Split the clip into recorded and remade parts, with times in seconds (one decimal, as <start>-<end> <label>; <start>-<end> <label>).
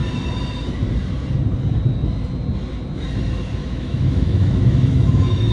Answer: 0.0-3.6 recorded; 3.6-5.5 remade